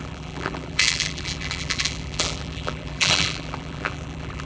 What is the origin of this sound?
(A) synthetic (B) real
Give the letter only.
A